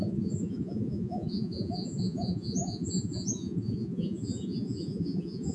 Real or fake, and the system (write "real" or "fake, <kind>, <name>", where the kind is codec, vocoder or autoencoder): fake, vocoder, Vocos